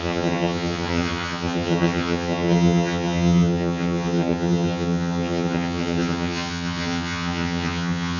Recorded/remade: remade